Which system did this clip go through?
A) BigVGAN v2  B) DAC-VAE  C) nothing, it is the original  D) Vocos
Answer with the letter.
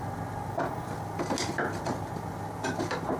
C